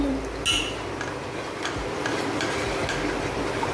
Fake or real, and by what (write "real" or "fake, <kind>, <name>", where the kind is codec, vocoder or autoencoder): real